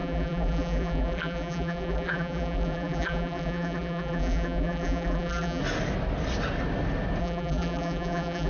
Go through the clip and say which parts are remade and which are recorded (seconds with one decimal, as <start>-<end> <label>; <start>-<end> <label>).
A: 0.0-5.6 remade; 5.6-7.2 recorded; 7.2-8.5 remade